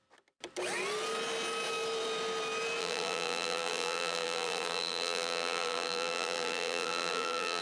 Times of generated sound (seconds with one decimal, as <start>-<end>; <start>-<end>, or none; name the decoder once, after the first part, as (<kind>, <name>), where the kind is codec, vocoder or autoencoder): 2.8-7.6 (vocoder, BigVGAN v2)